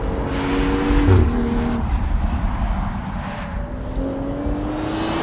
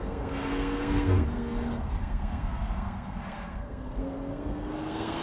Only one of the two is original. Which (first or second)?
first